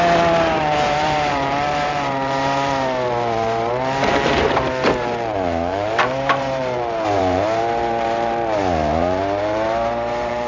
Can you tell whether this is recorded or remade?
remade